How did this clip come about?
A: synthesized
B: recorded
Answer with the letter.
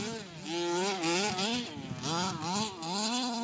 B